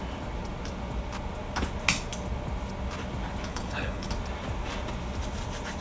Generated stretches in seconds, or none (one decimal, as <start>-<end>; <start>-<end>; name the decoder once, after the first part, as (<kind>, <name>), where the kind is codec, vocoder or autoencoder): 3.5-4.1 (codec, HILCodec)

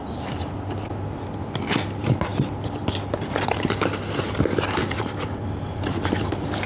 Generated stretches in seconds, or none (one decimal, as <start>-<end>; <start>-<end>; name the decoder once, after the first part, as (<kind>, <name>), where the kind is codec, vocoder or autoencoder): none

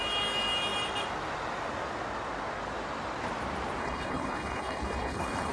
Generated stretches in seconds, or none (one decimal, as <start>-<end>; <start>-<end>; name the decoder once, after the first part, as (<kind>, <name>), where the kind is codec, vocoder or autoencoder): 3.8-5.5 (codec, HILCodec)